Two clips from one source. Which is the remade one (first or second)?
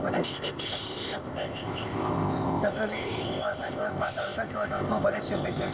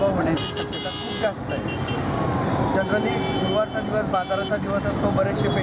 first